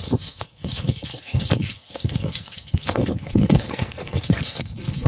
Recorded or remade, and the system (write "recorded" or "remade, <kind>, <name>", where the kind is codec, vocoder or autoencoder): remade, codec, SNAC